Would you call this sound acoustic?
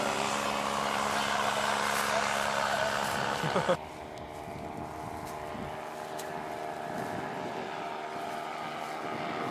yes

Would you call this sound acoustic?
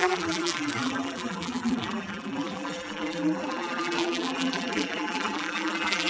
no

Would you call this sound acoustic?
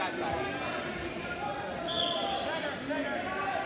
yes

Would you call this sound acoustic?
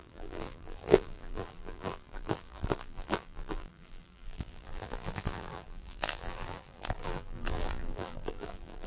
no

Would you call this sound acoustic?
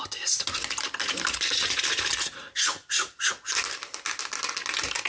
yes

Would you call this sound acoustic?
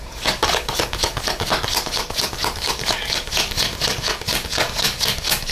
no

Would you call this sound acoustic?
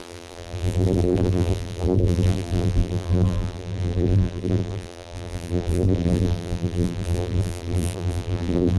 no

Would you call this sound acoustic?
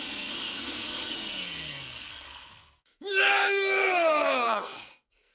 no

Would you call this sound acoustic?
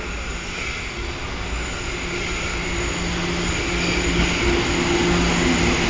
yes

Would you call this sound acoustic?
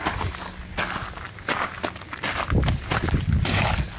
yes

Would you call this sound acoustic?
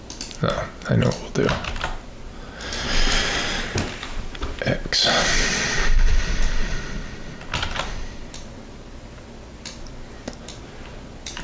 yes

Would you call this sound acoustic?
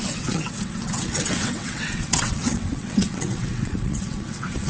no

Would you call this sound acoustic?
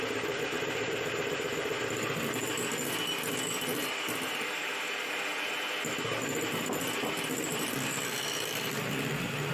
yes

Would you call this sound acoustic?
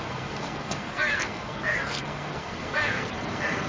no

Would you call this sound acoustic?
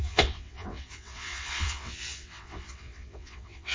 no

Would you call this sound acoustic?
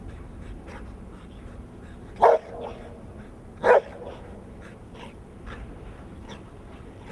yes